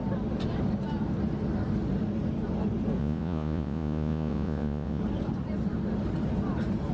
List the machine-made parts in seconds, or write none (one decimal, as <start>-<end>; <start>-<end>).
3.0-5.0